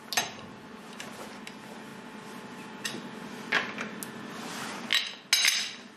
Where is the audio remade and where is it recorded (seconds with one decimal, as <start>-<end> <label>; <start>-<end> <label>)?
0.0-6.0 recorded

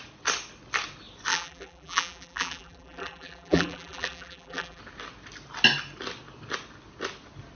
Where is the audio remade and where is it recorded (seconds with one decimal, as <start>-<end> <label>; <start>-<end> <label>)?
0.0-1.3 recorded; 1.3-4.8 remade; 4.8-7.5 recorded